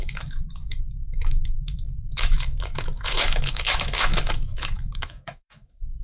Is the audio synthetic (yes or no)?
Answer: yes